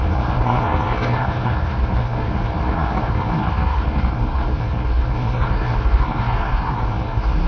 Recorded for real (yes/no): no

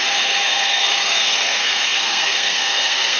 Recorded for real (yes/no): no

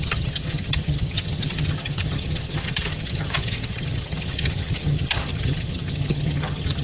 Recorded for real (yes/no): no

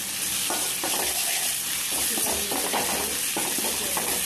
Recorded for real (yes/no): yes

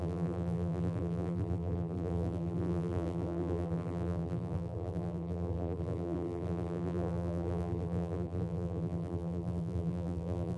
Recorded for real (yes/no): no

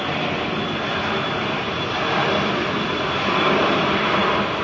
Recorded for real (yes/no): yes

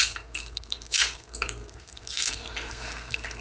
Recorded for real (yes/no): no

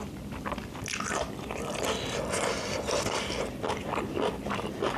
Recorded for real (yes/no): yes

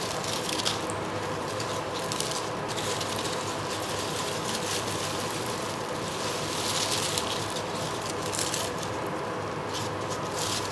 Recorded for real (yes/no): no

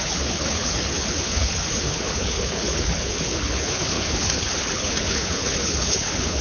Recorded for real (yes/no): no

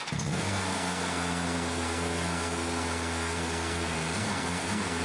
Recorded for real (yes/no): no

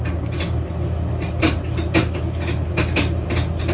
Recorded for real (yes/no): yes